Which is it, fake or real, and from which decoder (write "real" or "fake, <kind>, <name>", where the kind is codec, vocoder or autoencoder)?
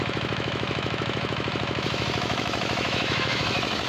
fake, autoencoder, DAC-VAE